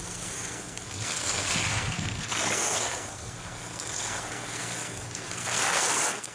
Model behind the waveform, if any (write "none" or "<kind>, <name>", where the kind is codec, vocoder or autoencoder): codec, SNAC